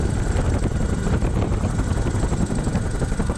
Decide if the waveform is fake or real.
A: real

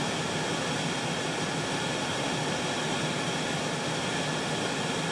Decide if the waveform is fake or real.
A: real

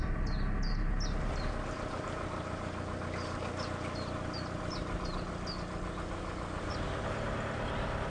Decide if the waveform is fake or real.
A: real